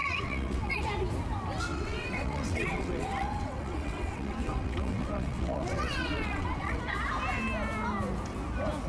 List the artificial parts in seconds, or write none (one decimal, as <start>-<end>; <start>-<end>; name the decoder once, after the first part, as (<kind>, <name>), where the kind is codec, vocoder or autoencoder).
0.0-0.9 (vocoder, WaveNeXt); 1.7-6.8